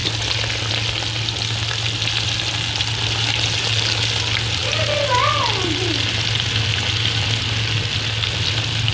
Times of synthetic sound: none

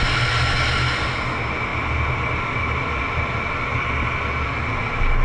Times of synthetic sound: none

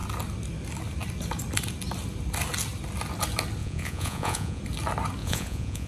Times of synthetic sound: 3.6-4.6 (vocoder, Vocos); 5.2-5.9

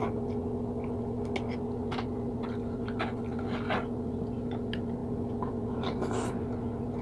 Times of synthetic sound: none